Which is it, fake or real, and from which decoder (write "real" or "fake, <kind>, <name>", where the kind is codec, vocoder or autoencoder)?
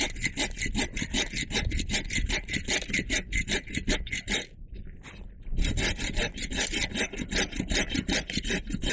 real